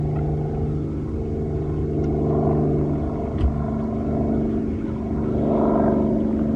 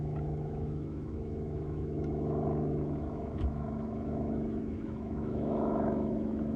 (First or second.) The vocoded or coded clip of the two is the second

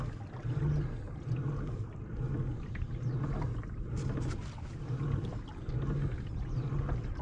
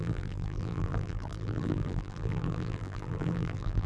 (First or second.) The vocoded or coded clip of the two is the second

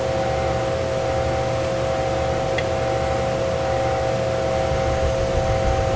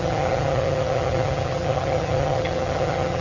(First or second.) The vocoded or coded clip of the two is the second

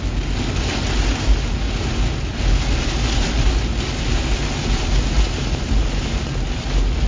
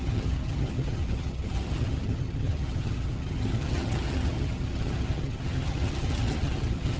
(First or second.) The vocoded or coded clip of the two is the second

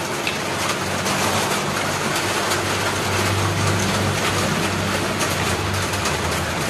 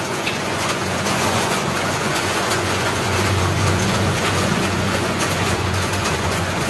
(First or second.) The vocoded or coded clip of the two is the second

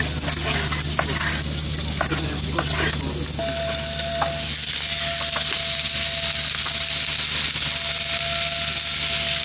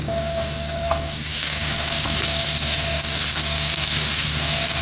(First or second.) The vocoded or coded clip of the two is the second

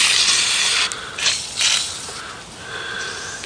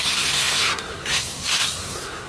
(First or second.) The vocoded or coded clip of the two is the second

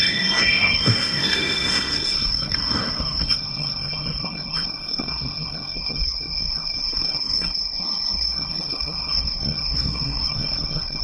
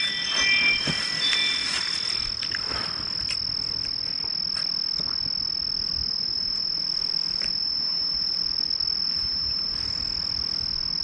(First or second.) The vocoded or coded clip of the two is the first